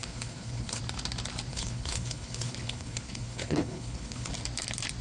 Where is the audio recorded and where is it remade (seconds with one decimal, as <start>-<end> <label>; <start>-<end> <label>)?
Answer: 0.0-0.8 remade; 0.8-1.5 recorded; 1.5-4.3 remade; 4.3-5.0 recorded